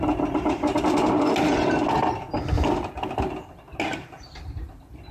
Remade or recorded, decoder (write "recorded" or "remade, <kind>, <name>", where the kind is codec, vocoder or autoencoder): recorded